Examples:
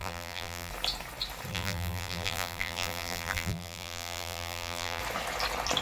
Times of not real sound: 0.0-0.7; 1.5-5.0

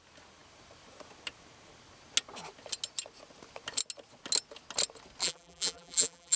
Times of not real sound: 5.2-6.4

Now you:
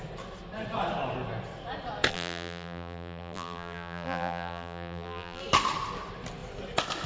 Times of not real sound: 2.1-5.4